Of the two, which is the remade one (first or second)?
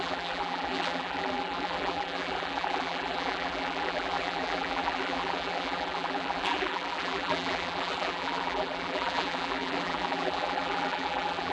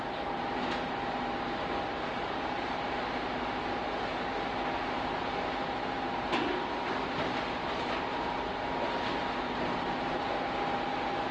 first